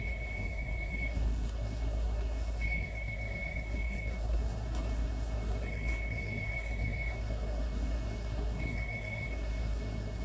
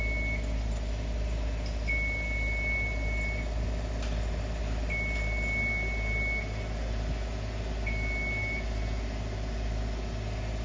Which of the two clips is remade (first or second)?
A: first